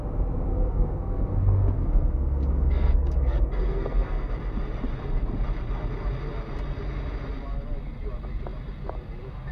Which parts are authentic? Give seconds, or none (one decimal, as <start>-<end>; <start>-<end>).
0.0-0.5; 4.3-9.5